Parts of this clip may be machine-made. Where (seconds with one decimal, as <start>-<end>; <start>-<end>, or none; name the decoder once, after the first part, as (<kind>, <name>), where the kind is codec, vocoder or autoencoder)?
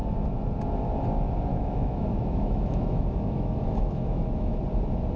1.5-4.6 (autoencoder, DAC-VAE)